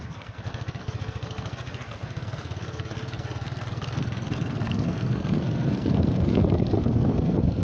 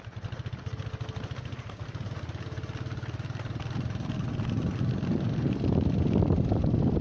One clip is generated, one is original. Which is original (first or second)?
second